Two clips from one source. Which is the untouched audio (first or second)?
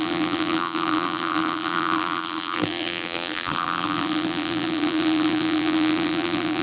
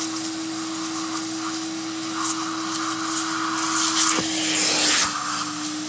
second